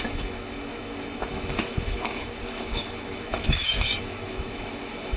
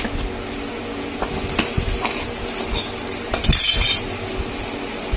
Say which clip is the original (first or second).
second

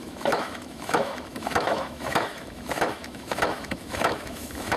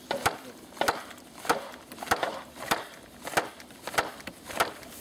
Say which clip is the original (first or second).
second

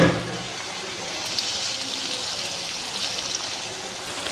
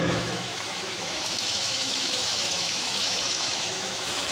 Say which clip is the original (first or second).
first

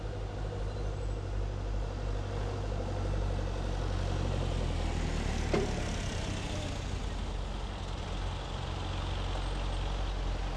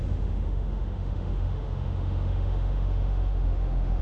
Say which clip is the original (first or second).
first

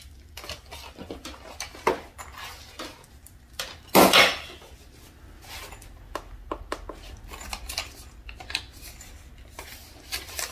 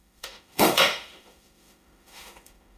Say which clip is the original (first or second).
first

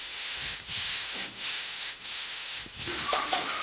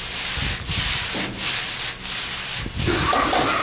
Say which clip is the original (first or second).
second